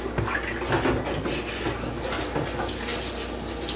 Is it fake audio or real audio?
real